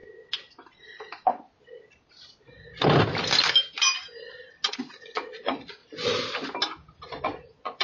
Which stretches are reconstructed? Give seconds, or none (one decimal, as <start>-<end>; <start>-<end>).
4.7-5.8; 7.2-7.8